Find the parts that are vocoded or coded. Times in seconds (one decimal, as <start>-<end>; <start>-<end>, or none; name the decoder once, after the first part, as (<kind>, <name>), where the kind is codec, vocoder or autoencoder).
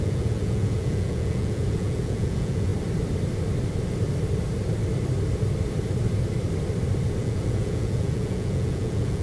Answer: 0.0-2.7 (vocoder, Vocos); 7.2-9.2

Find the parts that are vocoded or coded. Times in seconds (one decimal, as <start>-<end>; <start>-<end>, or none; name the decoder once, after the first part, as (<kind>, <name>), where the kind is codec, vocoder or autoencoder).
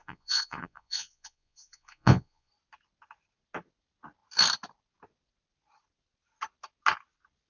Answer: 0.0-2.5 (vocoder, Vocos)